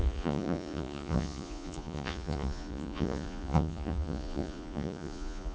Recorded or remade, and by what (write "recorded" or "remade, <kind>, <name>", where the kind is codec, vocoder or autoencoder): remade, vocoder, Vocos